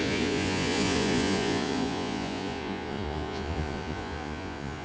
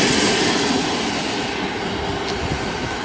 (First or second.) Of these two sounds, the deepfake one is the first